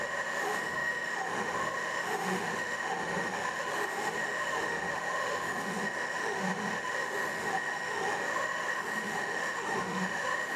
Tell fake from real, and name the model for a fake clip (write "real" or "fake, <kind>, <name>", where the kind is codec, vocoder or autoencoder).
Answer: fake, autoencoder, DAC-VAE